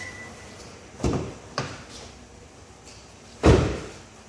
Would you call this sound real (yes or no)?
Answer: no